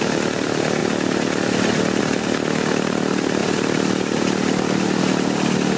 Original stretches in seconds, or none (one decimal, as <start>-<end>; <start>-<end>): 0.0-5.8